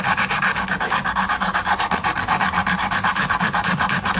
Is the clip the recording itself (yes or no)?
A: yes